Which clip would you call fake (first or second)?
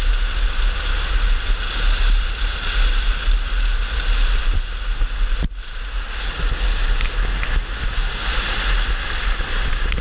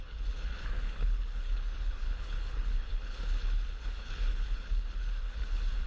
second